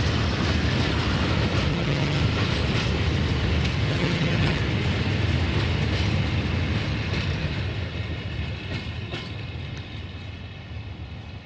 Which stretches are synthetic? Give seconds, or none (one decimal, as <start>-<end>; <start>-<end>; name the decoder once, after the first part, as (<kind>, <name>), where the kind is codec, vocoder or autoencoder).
1.7-2.2 (vocoder, HiFi-GAN); 3.9-4.6